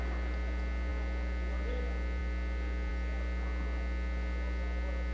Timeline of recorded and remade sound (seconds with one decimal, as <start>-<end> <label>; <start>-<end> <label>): 0.0-5.1 recorded